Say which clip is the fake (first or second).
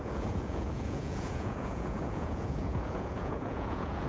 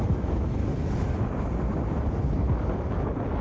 first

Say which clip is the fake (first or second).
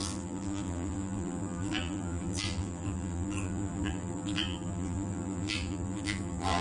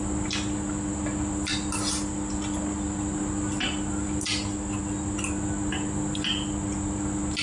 first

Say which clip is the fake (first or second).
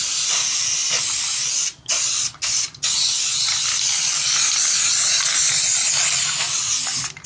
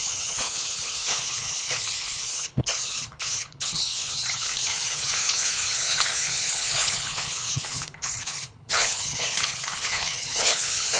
second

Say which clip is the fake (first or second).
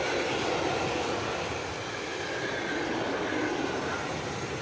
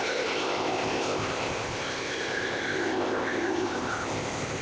second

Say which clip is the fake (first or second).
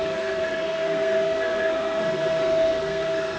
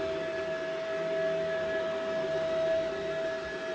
first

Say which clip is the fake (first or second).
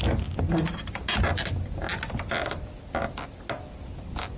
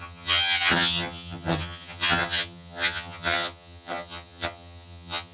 second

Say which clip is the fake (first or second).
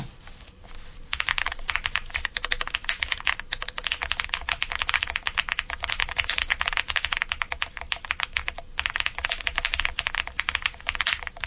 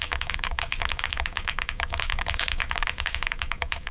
second